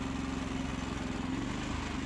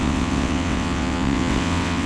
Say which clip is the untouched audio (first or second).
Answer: first